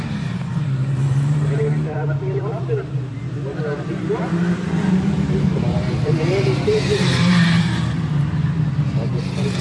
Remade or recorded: remade